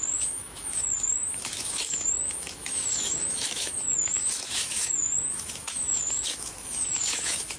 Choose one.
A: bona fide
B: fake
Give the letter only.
B